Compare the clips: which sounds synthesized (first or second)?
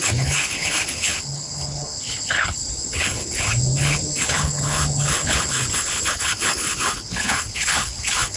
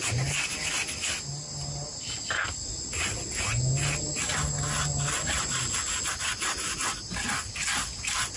first